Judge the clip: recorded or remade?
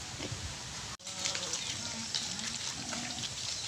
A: recorded